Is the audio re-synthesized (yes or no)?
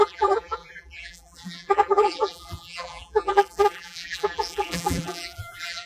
yes